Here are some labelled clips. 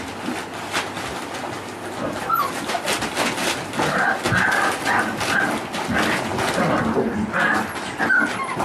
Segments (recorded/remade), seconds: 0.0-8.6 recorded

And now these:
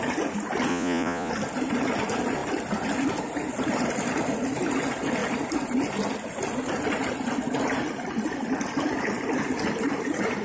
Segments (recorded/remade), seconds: 0.0-0.7 recorded; 0.7-1.3 remade; 1.3-10.4 recorded

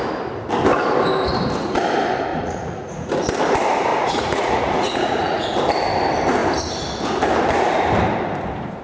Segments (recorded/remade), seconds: 0.0-2.3 recorded; 2.3-3.1 remade; 3.1-3.9 recorded; 3.9-5.6 remade; 5.6-8.8 recorded

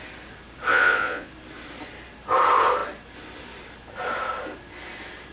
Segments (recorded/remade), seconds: 0.0-0.7 recorded; 0.7-1.3 remade; 1.3-5.3 recorded

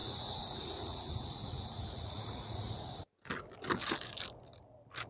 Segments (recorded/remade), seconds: 0.0-3.1 remade; 3.1-5.1 recorded

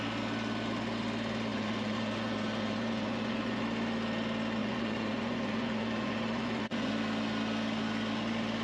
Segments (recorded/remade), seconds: 0.0-1.5 recorded; 1.5-3.6 remade; 3.6-4.6 recorded; 4.6-6.9 remade; 6.9-8.6 recorded

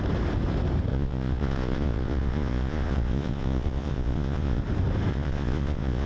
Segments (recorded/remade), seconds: 0.0-0.9 recorded; 0.9-4.6 remade; 4.6-5.1 recorded; 5.1-6.1 remade